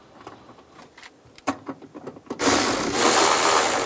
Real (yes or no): yes